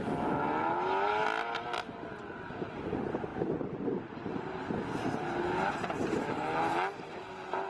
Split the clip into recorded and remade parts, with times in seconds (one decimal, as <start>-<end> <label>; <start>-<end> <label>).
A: 0.0-3.3 recorded; 3.3-4.0 remade; 4.0-7.7 recorded

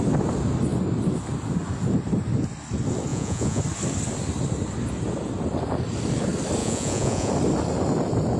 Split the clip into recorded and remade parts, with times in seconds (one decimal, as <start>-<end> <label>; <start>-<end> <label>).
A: 0.0-3.1 recorded; 3.1-3.6 remade; 3.6-6.6 recorded; 6.6-7.3 remade; 7.3-8.4 recorded

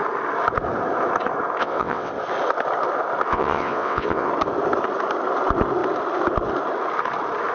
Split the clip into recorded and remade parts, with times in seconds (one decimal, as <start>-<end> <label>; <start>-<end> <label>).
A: 0.0-1.6 recorded; 1.6-2.1 remade; 2.1-3.3 recorded; 3.3-4.3 remade; 4.3-7.5 recorded

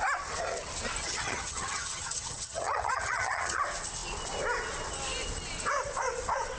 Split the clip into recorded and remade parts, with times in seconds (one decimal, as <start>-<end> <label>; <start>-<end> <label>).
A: 0.0-1.0 recorded; 1.0-3.6 remade; 3.6-6.6 recorded

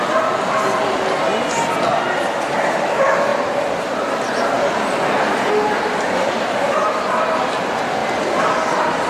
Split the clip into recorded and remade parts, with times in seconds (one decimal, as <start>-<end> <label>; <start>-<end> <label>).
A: 0.0-8.0 recorded; 8.0-8.7 remade; 8.7-9.1 recorded

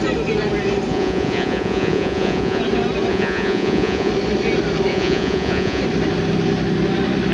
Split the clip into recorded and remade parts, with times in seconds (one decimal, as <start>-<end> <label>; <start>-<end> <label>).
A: 0.0-0.9 recorded; 0.9-2.6 remade; 2.6-3.1 recorded; 3.1-4.1 remade; 4.1-4.9 recorded; 4.9-5.8 remade; 5.8-7.3 recorded